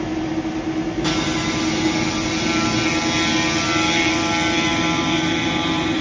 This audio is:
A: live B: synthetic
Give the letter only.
A